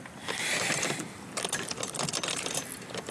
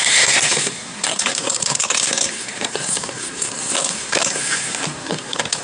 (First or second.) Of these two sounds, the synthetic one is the second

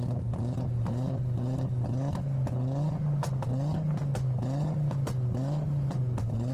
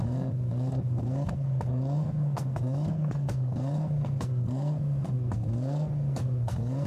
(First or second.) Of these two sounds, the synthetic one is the second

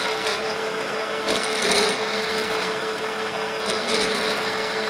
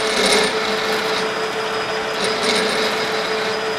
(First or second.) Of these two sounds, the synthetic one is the first